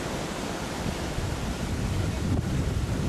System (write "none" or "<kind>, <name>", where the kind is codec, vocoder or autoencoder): none